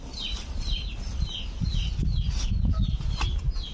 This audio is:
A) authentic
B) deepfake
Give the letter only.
A